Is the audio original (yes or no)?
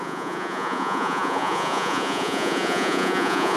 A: no